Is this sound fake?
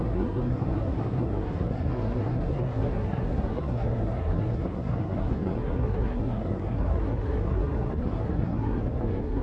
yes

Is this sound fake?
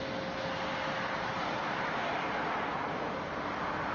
no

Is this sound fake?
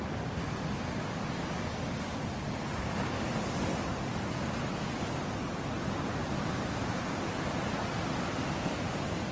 no